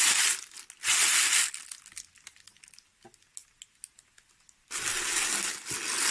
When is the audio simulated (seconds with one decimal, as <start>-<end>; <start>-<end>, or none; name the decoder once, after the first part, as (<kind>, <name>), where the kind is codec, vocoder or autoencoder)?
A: none